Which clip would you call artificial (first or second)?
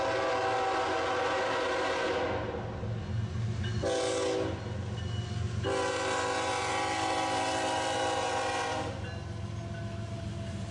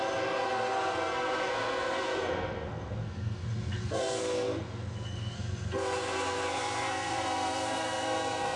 second